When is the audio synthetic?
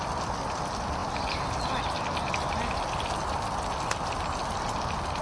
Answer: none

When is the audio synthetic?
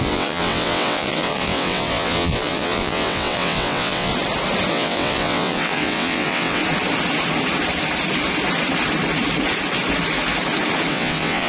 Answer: 0.0-4.1 (vocoder, WaveNeXt); 4.7-6.6; 10.9-11.5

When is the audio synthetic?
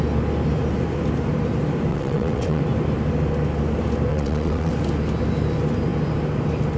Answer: 1.9-2.6 (vocoder, WaveNeXt); 4.1-4.7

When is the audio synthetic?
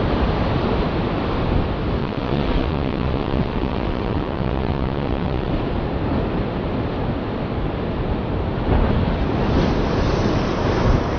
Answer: 2.0-5.5 (vocoder, WaveNeXt)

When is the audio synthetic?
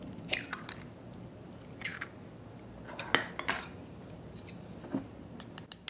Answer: none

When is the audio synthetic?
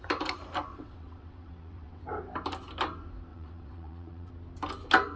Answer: 0.7-2.0 (vocoder, WaveNeXt); 3.3-4.3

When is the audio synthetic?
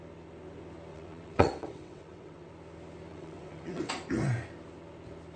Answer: 0.9-2.5 (vocoder, WaveNeXt); 3.1-3.9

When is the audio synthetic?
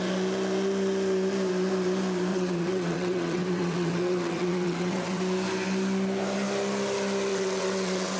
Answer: 2.3-5.2 (vocoder, WaveNeXt); 7.3-8.2